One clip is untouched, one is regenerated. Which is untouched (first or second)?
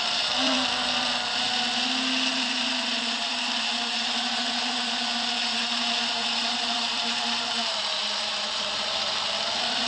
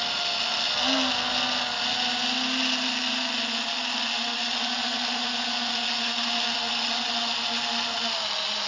second